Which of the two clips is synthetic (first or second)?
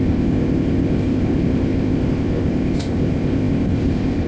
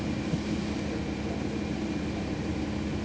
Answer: first